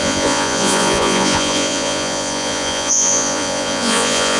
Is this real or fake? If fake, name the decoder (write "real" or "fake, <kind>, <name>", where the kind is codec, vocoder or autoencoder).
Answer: fake, vocoder, Vocos